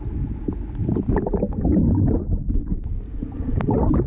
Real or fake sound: real